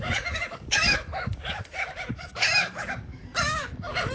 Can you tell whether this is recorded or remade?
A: remade